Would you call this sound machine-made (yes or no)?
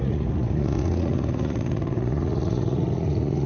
yes